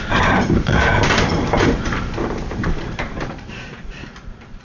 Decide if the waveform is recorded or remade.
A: remade